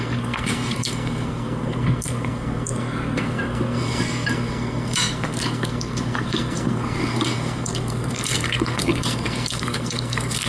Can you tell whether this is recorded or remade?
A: remade